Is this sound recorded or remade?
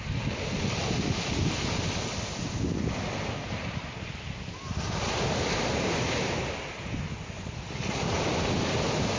recorded